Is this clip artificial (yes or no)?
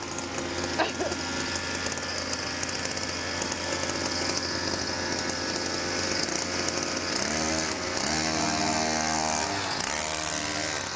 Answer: no